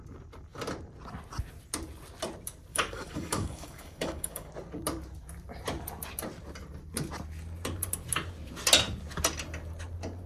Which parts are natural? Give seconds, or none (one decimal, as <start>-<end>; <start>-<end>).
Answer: 0.0-2.7; 4.5-10.3